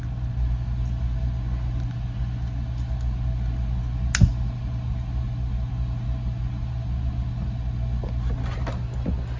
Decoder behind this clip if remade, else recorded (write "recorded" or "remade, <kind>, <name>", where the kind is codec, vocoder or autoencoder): recorded